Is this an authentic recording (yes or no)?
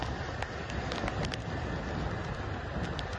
yes